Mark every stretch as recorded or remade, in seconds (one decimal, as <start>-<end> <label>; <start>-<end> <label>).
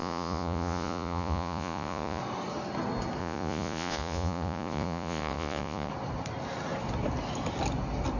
0.0-2.2 remade; 2.2-3.2 recorded; 3.2-5.9 remade; 5.9-8.2 recorded